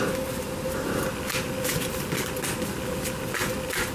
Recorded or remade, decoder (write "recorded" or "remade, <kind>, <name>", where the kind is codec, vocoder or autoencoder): recorded